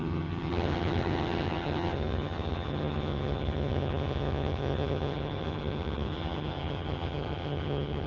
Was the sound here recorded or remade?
remade